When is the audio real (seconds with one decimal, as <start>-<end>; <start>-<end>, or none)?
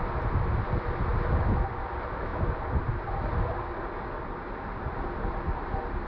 0.0-6.1